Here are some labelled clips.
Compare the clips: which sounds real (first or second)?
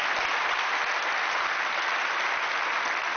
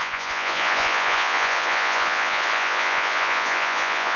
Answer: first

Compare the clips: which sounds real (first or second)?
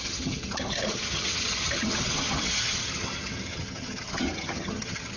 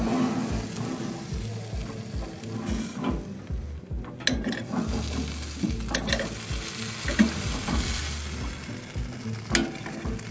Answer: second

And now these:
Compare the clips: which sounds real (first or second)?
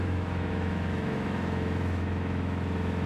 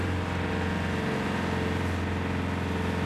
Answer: second